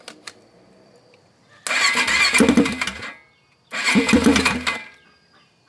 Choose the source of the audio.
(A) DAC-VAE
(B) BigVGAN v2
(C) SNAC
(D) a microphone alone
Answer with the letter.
D